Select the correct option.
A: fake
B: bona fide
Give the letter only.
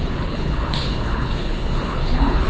A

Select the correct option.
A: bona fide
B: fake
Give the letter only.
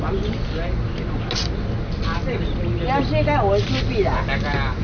A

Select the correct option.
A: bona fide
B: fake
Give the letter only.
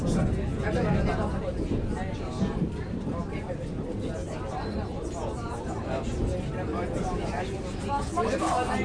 A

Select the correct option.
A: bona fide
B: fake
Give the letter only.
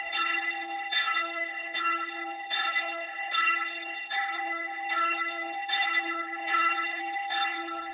B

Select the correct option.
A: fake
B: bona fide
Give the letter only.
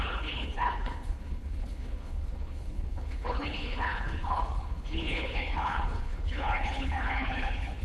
A